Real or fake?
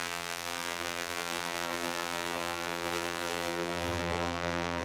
fake